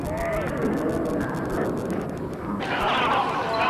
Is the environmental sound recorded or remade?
recorded